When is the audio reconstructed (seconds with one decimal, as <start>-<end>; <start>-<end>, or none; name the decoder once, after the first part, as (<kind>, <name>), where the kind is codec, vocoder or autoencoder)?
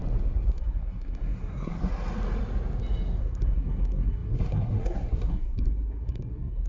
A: 0.5-1.9 (codec, SNAC); 3.2-6.7